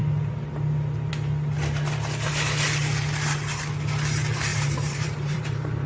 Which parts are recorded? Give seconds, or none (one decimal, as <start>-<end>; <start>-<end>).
0.0-4.5